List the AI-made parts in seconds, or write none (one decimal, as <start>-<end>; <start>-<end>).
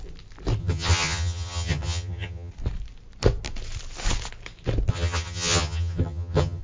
0.6-2.5; 4.9-6.6